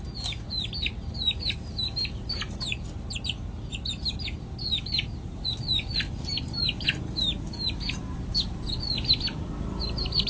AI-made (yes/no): no